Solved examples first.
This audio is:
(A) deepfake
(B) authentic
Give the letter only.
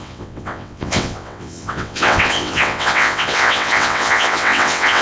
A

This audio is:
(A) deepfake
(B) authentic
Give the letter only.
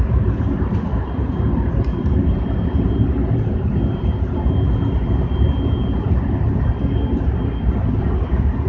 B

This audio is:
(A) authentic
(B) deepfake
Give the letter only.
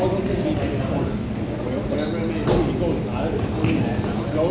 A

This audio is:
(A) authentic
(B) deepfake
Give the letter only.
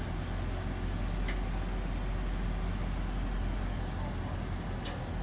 A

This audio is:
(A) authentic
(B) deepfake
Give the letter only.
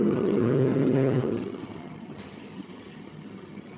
B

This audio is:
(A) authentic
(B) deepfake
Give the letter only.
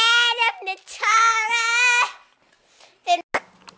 A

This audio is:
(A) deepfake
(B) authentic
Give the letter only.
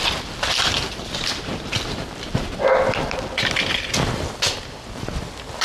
B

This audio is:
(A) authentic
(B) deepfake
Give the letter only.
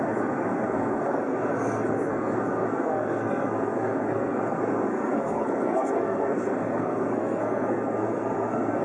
B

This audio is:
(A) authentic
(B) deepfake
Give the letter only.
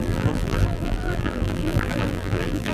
B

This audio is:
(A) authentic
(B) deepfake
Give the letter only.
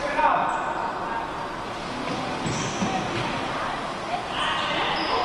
A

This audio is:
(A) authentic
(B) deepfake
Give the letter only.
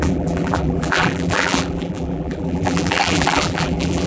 B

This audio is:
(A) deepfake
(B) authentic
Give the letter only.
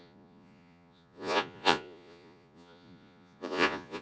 A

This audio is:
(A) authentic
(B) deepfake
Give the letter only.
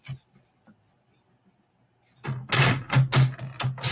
A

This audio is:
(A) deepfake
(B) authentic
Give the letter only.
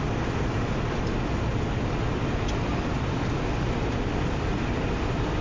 B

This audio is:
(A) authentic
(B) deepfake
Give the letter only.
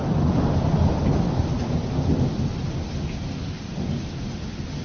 A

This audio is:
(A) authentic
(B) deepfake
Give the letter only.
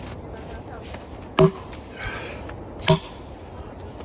A